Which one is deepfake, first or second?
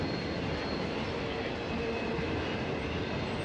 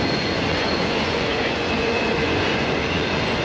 second